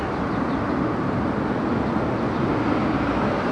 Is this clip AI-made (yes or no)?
no